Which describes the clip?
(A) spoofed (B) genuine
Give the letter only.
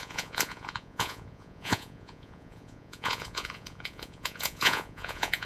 A